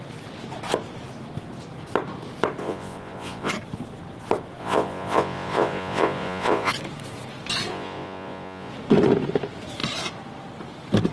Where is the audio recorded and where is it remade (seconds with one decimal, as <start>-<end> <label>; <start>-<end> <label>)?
0.0-2.6 recorded; 2.6-3.5 remade; 3.5-4.6 recorded; 4.6-6.7 remade; 6.7-7.7 recorded; 7.7-8.7 remade; 8.7-11.1 recorded